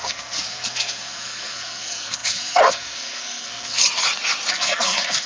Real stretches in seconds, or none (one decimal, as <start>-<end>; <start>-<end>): 3.8-4.5